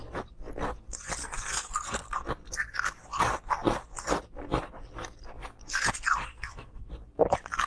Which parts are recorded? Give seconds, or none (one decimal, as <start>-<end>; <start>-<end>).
0.0-1.2; 1.7-6.3; 6.9-7.7